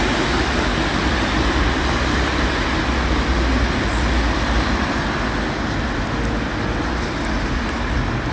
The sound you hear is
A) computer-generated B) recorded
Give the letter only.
B